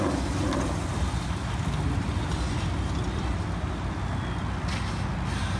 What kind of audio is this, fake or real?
real